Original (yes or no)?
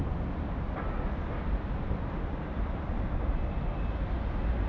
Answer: yes